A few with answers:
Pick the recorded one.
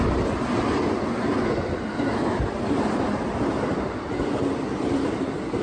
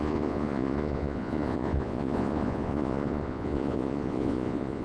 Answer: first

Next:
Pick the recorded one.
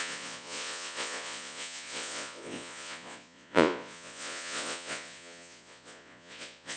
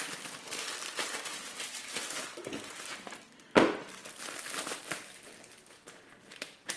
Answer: second